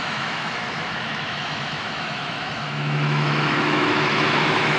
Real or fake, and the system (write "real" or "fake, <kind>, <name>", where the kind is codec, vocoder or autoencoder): fake, autoencoder, DAC-VAE